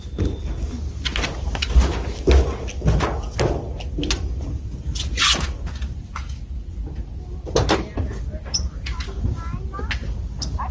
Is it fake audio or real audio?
real